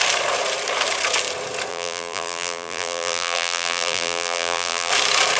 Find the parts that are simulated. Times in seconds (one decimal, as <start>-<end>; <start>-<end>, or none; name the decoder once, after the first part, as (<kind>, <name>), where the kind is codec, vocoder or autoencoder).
1.7-4.9 (vocoder, BigVGAN v2)